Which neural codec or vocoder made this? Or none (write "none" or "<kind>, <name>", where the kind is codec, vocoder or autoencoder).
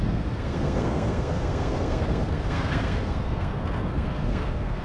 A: codec, SNAC